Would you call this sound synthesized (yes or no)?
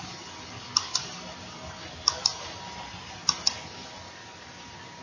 no